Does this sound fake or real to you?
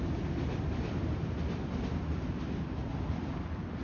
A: real